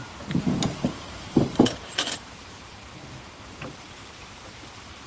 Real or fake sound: fake